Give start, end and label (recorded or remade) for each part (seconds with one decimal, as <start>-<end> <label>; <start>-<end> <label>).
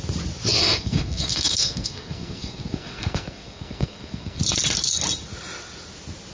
0.0-0.6 recorded; 0.6-4.4 remade; 4.4-6.3 recorded